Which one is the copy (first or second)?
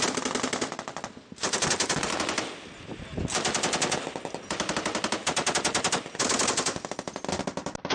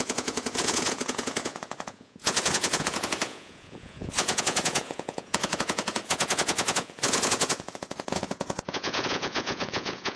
second